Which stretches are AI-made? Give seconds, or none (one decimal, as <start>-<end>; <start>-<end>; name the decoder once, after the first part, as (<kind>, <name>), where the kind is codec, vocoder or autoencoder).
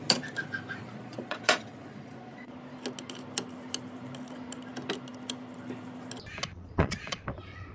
0.8-2.5 (vocoder, Vocos); 6.5-7.2